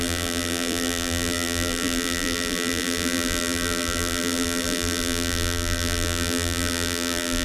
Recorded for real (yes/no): no